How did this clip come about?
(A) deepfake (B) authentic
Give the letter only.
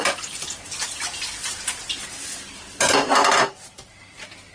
B